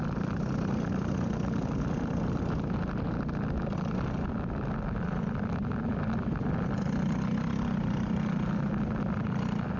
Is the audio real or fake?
real